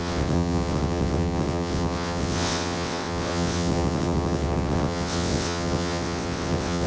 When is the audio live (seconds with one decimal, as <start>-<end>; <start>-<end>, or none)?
none